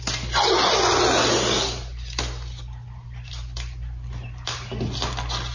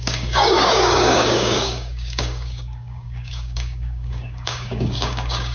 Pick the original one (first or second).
first